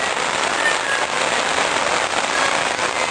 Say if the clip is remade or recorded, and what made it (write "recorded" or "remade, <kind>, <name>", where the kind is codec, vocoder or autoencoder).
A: recorded